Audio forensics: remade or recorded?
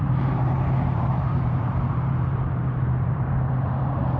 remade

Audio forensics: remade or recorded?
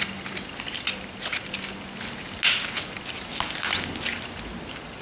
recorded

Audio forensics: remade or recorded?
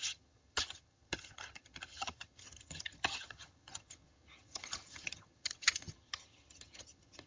remade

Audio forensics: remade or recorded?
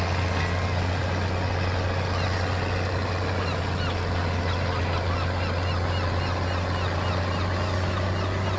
recorded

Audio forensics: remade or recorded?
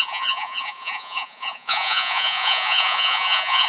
remade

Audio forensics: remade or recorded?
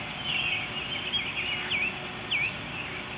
recorded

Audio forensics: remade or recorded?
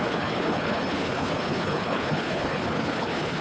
remade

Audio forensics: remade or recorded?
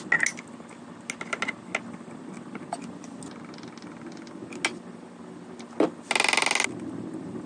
recorded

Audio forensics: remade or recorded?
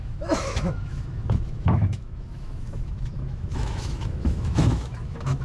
remade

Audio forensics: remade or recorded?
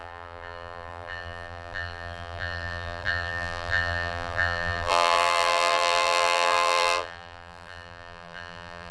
remade